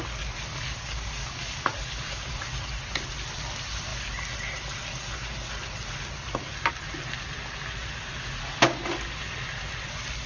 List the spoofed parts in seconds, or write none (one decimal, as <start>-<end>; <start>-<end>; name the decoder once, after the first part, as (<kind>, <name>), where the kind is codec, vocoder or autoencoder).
0.5-2.3 (codec, DAC); 8.4-9.2